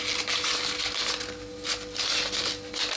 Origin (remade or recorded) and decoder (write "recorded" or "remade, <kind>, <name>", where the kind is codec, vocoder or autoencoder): recorded